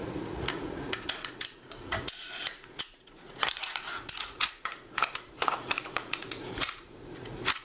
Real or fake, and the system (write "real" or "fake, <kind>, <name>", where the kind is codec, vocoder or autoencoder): fake, vocoder, Vocos